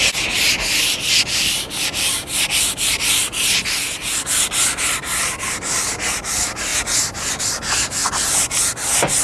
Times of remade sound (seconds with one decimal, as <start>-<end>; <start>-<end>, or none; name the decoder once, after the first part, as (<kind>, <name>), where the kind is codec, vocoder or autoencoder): none